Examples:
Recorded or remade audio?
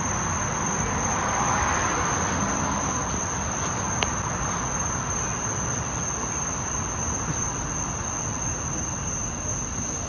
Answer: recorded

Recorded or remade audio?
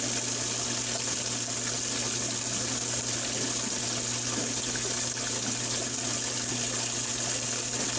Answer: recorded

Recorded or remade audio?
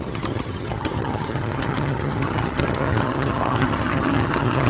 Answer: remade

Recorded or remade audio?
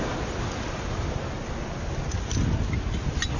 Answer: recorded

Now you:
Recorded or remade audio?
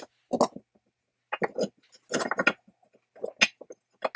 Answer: recorded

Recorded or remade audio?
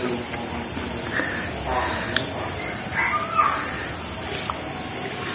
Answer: recorded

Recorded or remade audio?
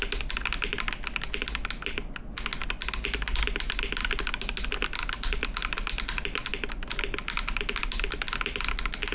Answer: recorded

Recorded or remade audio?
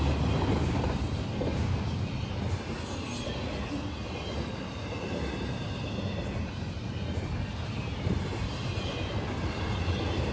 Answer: recorded